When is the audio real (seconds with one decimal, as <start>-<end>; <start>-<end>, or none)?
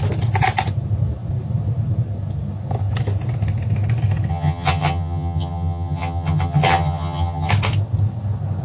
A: 0.0-4.3; 7.5-8.6